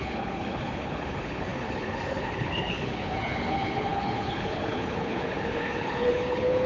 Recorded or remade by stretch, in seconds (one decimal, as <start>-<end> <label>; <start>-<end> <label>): 0.0-6.7 remade